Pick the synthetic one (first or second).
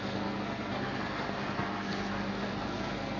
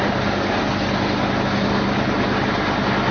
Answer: first